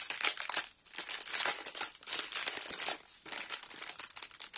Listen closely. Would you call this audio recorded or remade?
recorded